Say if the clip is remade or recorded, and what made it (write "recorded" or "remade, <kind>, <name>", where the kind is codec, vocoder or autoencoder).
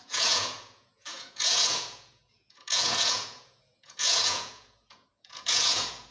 remade, vocoder, Vocos